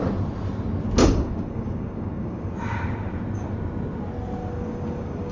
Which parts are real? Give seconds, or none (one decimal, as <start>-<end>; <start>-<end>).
0.0-1.0; 2.5-4.4